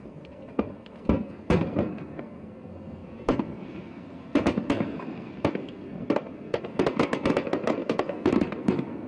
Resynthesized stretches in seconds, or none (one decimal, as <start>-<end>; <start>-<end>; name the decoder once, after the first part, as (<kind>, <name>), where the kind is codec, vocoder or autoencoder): 0.0-9.1 (codec, SNAC)